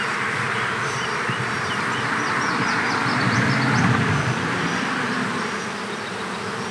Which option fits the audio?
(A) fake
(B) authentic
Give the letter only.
A